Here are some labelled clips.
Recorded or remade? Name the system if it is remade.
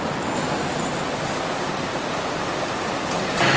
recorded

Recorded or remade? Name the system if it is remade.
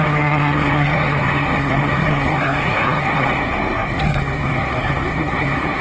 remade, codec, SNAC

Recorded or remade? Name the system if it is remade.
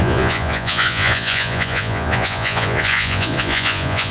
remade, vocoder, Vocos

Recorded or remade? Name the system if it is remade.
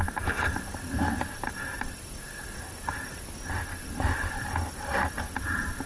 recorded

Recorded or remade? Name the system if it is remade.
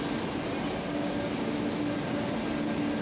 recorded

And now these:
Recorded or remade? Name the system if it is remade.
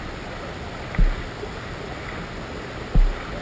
recorded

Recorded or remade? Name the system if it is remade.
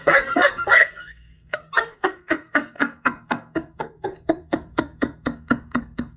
remade, codec, SNAC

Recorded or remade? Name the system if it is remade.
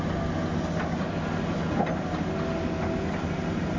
recorded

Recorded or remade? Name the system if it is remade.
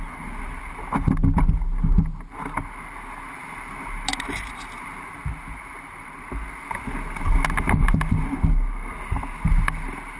recorded